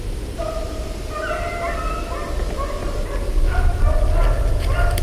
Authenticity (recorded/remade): recorded